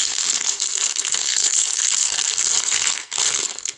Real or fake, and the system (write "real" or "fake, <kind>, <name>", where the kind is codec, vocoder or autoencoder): fake, codec, SNAC